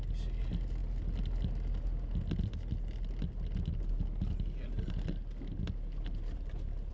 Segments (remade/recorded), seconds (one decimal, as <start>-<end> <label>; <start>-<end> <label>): 0.0-6.9 recorded